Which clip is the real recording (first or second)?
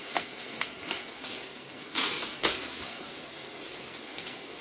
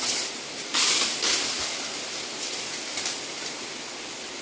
second